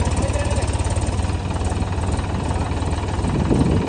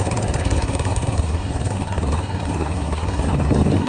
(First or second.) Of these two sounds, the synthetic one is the second